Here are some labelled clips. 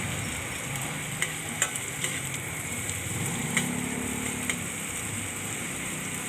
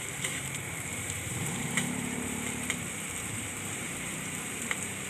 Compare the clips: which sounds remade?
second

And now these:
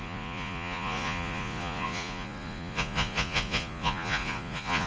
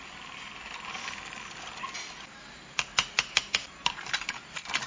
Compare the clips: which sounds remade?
first